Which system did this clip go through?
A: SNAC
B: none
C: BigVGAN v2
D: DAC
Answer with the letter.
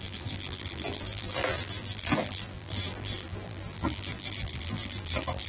C